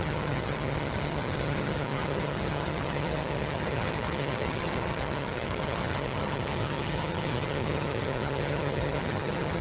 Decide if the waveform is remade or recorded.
remade